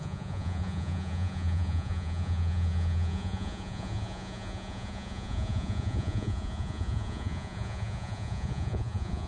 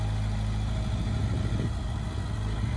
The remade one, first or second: first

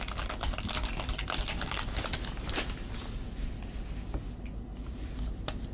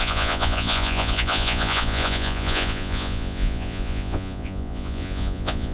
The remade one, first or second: second